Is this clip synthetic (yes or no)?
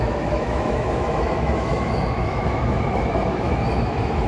yes